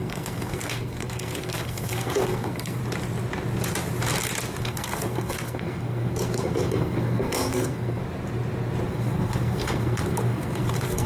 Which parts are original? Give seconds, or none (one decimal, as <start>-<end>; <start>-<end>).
2.8-4.6; 8.0-8.9